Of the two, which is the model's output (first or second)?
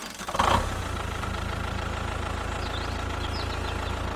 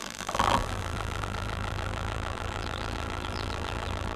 second